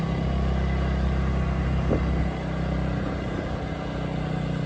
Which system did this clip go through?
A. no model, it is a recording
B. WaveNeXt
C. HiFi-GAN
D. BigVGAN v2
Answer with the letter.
A